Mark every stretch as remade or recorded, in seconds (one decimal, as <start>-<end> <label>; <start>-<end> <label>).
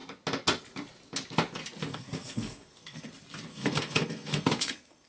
0.0-1.9 recorded; 1.9-3.1 remade; 3.1-3.5 recorded; 3.5-5.1 remade